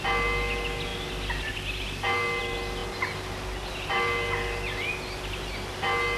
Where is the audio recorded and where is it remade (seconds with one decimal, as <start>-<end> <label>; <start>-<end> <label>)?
0.0-6.2 recorded